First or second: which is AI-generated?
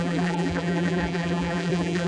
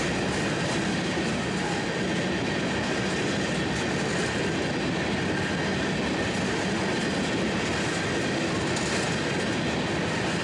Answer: first